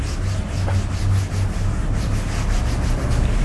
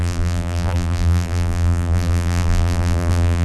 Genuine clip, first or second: first